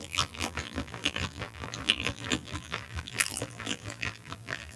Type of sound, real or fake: fake